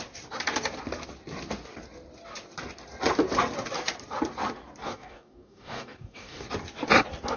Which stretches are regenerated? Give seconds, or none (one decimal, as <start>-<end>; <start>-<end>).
4.8-6.5